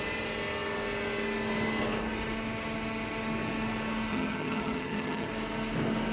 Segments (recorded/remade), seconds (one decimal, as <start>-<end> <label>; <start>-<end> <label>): 0.0-4.1 recorded; 4.1-5.3 remade; 5.3-6.1 recorded